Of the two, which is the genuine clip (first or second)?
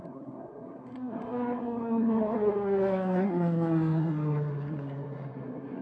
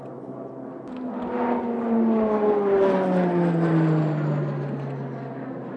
second